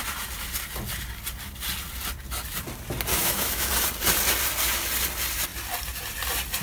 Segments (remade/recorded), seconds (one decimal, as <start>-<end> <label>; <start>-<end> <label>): 0.0-3.1 recorded; 3.1-3.7 remade; 3.7-6.6 recorded